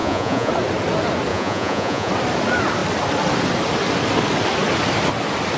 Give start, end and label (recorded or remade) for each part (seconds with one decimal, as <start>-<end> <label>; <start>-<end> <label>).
0.0-0.5 remade; 0.5-1.3 recorded; 1.3-2.1 remade; 2.1-5.6 recorded